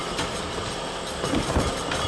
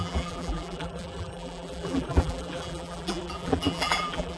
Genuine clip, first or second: first